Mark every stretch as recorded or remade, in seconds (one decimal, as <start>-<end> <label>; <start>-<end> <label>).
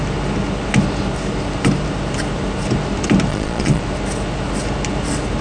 0.0-3.3 recorded; 3.3-3.8 remade; 3.8-5.4 recorded